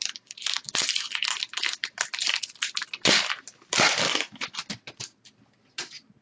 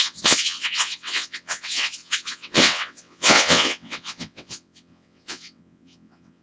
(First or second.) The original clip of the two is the first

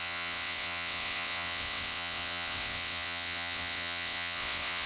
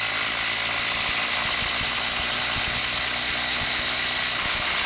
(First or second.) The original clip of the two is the second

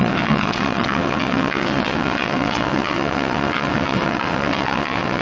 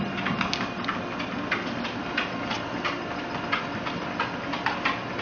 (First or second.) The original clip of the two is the second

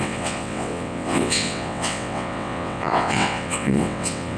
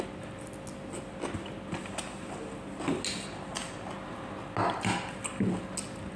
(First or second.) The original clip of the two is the second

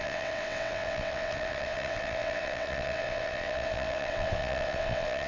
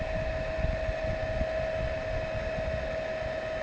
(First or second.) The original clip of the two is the second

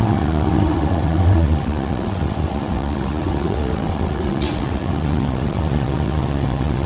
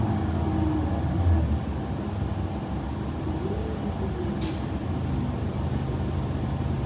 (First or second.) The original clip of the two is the second